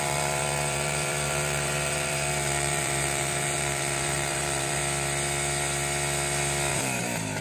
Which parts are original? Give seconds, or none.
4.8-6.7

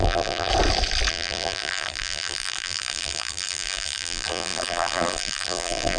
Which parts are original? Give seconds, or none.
0.5-1.1

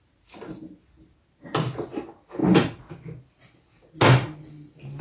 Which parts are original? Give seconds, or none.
0.0-5.0

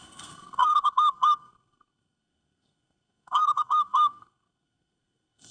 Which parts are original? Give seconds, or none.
none

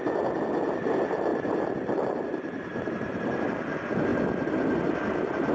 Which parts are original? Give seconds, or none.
0.0-1.3; 3.4-5.5